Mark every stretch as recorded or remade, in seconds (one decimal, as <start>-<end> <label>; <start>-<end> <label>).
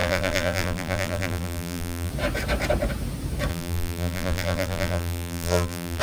0.0-2.1 remade; 2.1-3.5 recorded; 3.5-6.0 remade